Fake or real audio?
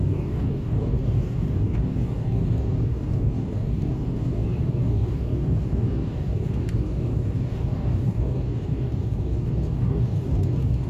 fake